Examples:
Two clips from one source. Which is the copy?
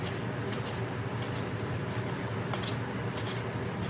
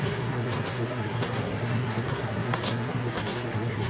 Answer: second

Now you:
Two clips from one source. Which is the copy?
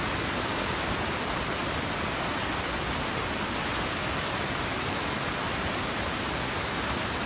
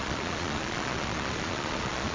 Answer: second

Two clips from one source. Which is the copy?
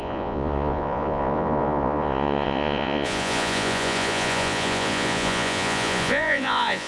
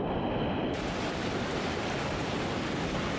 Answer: first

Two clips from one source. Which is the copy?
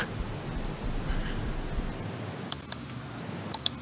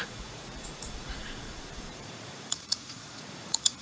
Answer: second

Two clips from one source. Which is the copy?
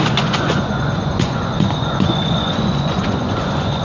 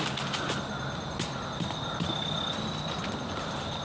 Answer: first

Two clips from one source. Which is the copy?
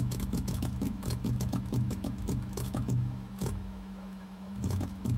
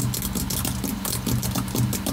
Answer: first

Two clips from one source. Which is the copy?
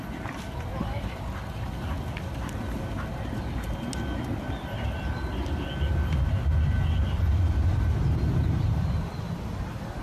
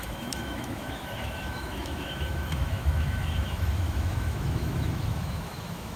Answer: second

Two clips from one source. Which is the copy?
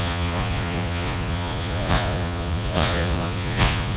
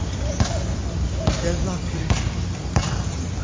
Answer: first